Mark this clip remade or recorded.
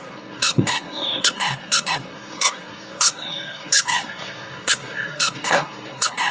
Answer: remade